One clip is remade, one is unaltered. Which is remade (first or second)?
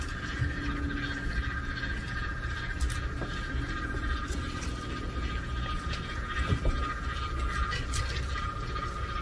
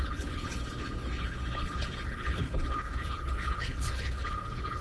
second